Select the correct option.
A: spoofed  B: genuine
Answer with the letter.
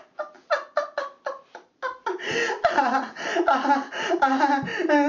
B